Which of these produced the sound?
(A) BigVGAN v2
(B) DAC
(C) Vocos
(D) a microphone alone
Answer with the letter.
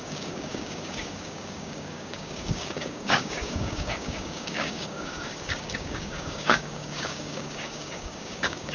B